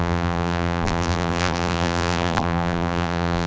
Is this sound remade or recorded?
remade